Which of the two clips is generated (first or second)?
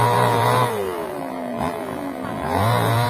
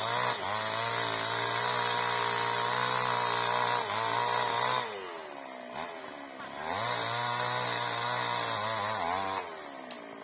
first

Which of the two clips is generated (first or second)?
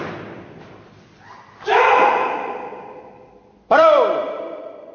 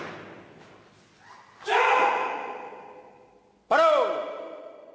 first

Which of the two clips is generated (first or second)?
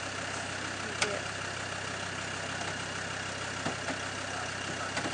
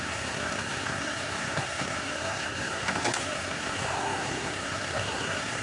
second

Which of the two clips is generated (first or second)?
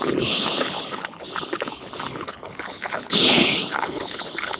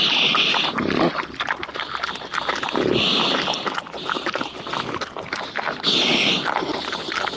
first